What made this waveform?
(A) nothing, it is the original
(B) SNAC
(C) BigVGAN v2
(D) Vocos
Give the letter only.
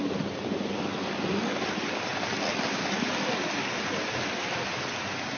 A